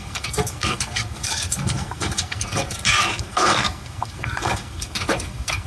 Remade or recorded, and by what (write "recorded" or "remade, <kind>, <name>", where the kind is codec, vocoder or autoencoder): remade, codec, SNAC